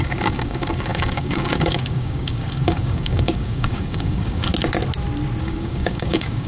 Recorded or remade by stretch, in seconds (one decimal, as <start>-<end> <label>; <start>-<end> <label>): 0.0-4.5 remade; 4.5-5.4 recorded; 5.4-6.5 remade